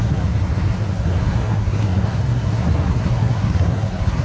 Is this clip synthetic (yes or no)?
yes